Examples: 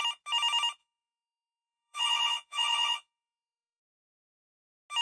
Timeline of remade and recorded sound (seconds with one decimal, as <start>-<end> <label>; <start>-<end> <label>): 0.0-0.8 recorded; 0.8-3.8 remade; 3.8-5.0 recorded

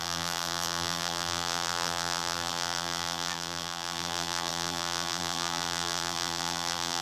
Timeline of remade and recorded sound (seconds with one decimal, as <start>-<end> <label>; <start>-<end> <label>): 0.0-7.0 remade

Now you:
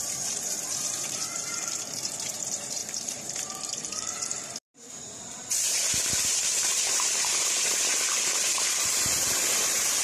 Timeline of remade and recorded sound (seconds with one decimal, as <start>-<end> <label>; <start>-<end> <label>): 0.0-10.0 remade

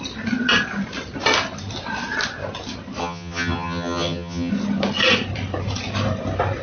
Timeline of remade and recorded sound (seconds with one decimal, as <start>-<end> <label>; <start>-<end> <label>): 0.0-3.0 recorded; 3.0-4.5 remade; 4.5-6.6 recorded

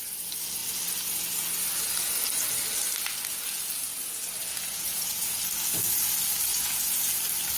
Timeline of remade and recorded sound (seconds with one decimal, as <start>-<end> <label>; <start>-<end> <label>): 0.0-4.4 recorded; 4.4-5.4 remade; 5.4-6.5 recorded; 6.5-7.1 remade; 7.1-7.6 recorded